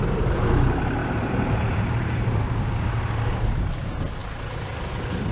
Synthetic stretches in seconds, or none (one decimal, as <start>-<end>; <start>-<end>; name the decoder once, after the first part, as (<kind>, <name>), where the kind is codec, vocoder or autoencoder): 1.0-2.8 (vocoder, BigVGAN v2)